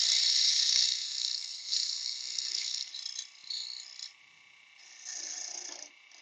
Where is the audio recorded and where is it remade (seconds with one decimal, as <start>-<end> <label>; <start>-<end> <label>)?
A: 0.0-0.5 recorded; 0.5-2.9 remade; 2.9-6.2 recorded